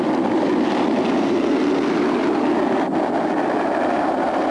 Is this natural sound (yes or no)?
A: yes